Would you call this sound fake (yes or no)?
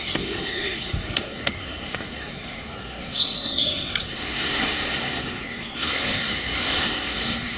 yes